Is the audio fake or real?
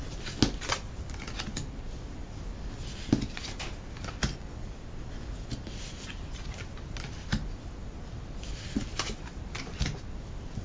real